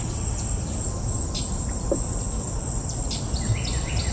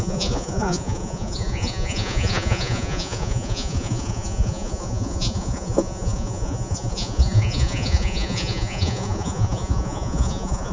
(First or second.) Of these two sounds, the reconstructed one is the second